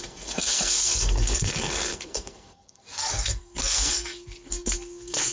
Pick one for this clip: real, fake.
fake